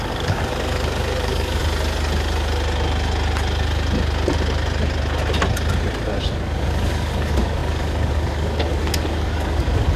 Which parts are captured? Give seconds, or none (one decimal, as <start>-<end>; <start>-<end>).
1.6-6.4